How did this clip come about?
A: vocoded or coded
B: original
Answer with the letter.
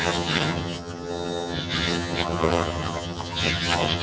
A